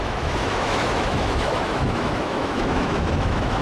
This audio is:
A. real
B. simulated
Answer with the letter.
B